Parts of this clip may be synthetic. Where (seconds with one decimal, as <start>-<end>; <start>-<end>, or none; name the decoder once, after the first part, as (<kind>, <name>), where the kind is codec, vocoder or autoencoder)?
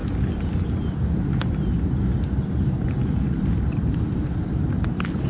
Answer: none